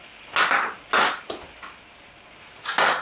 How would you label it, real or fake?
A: real